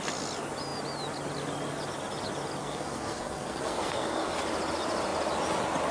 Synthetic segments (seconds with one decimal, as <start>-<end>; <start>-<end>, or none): 2.6-4.3